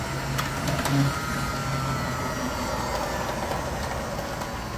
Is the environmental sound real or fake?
real